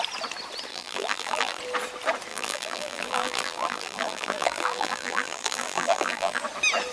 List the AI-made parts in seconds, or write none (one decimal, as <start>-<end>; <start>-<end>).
0.7-1.6; 2.3-6.4